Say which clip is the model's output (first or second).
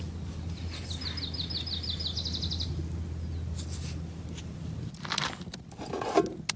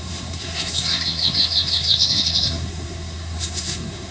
second